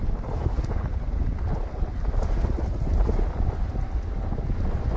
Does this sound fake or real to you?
real